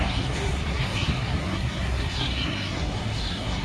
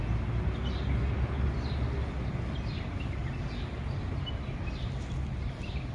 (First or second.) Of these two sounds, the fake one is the first